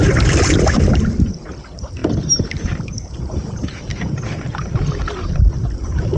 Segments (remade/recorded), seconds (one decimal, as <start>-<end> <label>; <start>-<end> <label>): 0.0-2.0 remade; 2.0-2.6 recorded; 2.6-6.2 remade